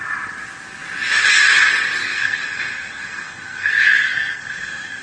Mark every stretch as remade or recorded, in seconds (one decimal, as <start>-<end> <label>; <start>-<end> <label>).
0.0-2.0 recorded; 2.0-5.0 remade